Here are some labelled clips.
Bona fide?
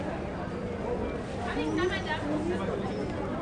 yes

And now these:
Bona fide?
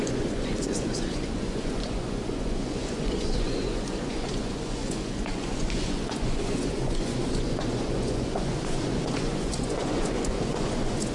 no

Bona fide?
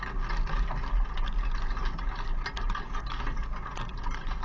yes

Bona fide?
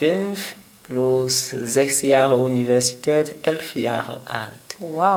no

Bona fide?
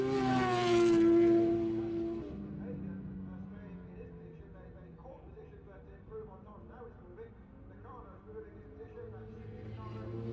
yes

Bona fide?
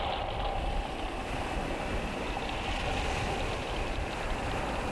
yes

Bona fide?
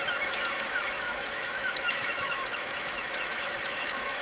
no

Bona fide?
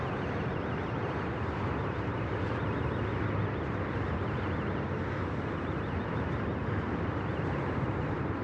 yes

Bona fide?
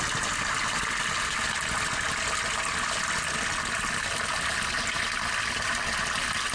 yes